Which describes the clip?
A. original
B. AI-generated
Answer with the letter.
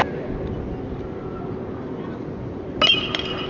A